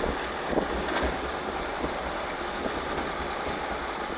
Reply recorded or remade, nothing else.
recorded